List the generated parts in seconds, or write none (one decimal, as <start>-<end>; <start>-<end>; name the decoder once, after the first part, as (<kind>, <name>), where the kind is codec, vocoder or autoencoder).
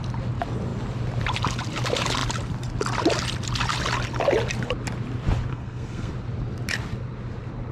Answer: 5.5-6.1 (codec, SNAC)